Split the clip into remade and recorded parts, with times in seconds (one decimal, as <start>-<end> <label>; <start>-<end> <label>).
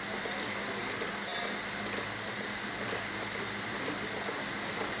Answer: 0.0-5.0 recorded